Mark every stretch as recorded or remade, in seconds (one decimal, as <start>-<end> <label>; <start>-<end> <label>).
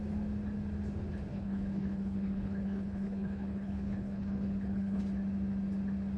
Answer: 0.0-1.3 recorded; 1.3-5.0 remade; 5.0-6.2 recorded